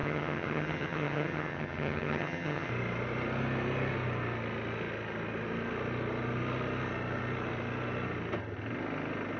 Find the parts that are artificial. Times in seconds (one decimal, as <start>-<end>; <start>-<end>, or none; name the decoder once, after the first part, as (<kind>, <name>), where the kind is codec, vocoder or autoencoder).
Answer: 0.0-2.7 (vocoder, HiFi-GAN)